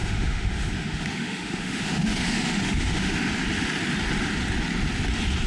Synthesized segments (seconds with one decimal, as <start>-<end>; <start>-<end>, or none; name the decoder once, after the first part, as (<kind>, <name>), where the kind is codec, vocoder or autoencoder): 0.0-3.3 (autoencoder, DAC-VAE)